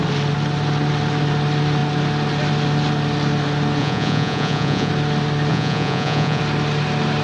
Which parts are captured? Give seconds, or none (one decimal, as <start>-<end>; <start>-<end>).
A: 0.0-3.8; 4.9-5.5; 6.4-7.2